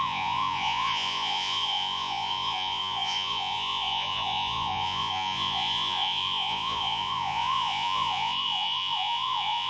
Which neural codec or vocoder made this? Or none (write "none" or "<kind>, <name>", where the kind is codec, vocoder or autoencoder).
vocoder, Vocos